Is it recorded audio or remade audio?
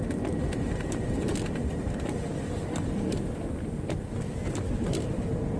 recorded